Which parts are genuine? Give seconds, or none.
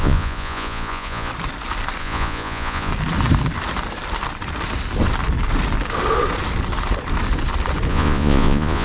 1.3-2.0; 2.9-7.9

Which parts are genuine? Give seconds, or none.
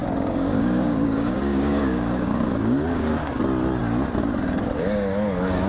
3.4-5.7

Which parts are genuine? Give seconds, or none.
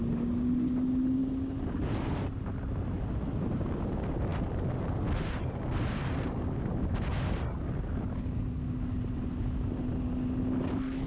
0.0-11.1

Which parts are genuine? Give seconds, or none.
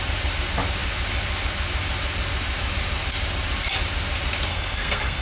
0.0-4.5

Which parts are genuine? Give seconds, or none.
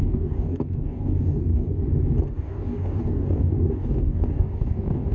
1.8-2.3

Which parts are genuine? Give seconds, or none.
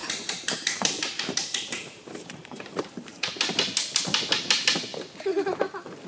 3.3-6.1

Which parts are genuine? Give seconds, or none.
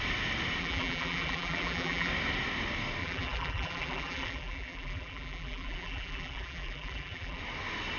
0.0-0.6; 2.1-3.0; 7.4-8.0